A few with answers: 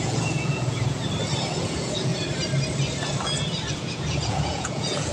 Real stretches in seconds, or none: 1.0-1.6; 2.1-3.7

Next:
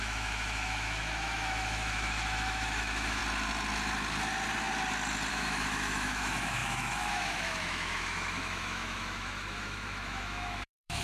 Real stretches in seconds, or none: 3.2-5.3

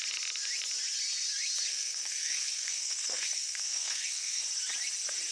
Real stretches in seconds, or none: 0.0-1.7; 4.4-5.3

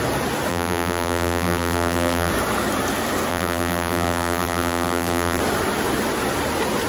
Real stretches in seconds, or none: 0.0-0.5; 2.3-3.3; 5.4-6.9